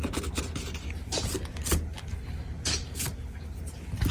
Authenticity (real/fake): real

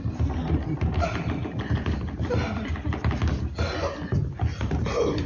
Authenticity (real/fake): real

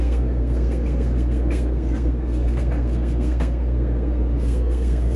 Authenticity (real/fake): fake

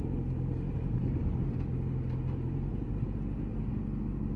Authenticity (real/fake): real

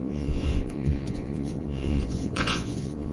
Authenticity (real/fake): fake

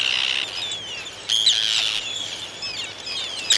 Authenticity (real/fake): real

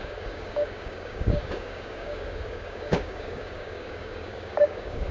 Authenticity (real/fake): fake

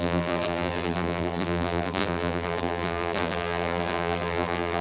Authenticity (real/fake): fake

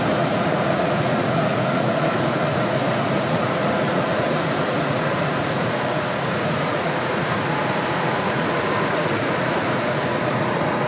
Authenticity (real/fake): fake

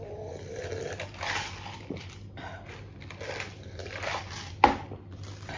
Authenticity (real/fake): real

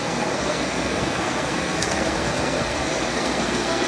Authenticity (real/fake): fake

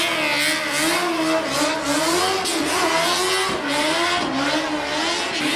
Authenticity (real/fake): real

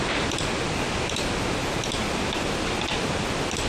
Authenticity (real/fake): real